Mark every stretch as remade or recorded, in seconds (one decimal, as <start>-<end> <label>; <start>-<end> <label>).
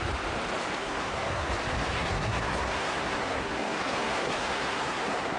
0.0-0.8 recorded; 0.8-1.5 remade; 1.5-1.9 recorded; 1.9-5.4 remade